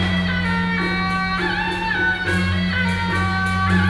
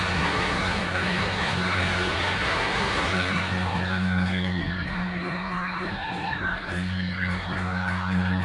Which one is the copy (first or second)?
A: second